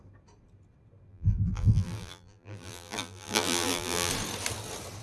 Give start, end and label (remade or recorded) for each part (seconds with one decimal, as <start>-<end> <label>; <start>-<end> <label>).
0.0-1.1 recorded; 1.1-4.1 remade; 4.1-5.0 recorded